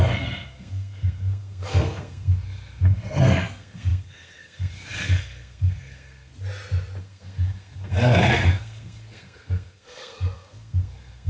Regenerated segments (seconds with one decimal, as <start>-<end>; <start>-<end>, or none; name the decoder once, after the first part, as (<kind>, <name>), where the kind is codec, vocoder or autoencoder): 0.0-6.3 (codec, SNAC); 7.0-11.3